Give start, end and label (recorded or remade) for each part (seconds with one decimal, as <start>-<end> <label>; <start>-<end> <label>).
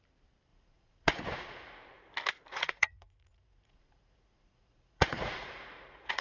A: 0.0-0.5 recorded; 0.5-2.0 remade; 2.0-2.5 recorded; 2.5-6.2 remade